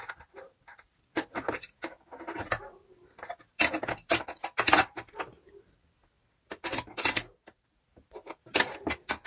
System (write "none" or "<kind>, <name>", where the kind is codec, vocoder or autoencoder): none